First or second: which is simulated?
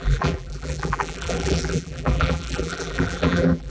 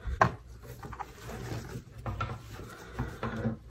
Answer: first